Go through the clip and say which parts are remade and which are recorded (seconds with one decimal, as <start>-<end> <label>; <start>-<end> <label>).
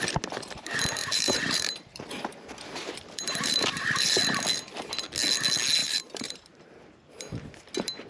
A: 0.0-1.0 recorded; 1.0-4.2 remade; 4.2-5.8 recorded; 5.8-6.8 remade; 6.8-8.1 recorded